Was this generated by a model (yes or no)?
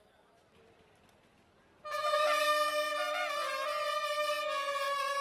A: no